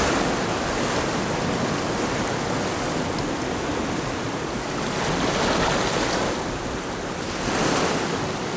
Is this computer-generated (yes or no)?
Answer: no